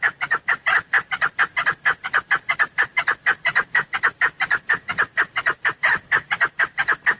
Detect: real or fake real